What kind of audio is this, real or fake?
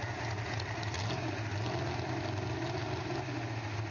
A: real